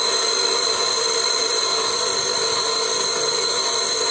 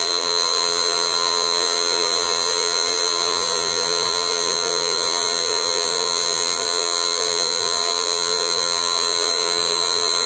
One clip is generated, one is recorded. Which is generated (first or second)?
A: second